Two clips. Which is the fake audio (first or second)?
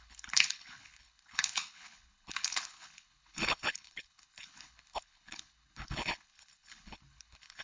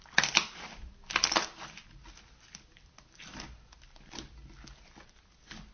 first